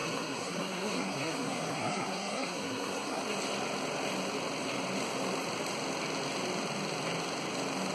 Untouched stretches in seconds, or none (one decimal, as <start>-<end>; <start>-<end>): 3.2-7.9